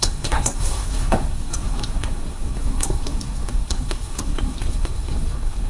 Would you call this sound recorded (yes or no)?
no